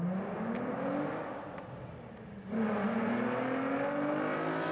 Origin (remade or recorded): recorded